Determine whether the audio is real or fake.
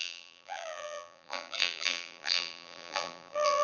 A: fake